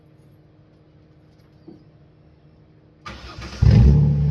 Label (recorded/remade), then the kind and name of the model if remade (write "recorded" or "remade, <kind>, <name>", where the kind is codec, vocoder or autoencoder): recorded